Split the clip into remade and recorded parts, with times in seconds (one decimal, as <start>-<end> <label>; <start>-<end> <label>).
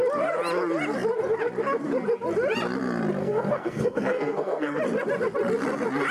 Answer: 0.0-3.2 recorded; 3.2-4.8 remade; 4.8-6.1 recorded